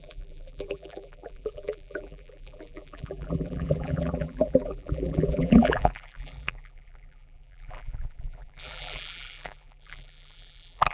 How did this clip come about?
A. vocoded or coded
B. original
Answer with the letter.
A